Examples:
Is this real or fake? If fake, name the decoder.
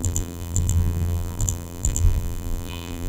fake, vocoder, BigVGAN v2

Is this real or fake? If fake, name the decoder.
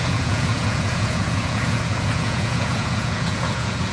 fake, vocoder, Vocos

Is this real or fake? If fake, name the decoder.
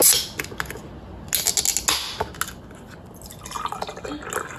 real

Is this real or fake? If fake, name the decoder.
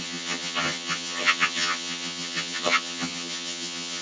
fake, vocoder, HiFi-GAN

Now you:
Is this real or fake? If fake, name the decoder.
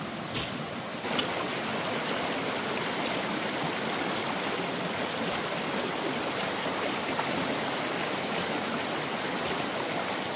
real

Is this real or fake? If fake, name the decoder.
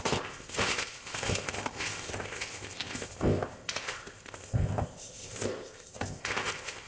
fake, codec, ZipCodec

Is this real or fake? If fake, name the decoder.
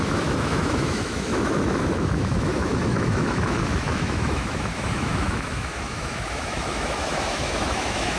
fake, autoencoder, DAC-VAE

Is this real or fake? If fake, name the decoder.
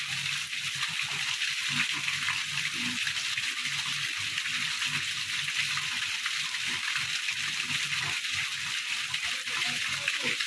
real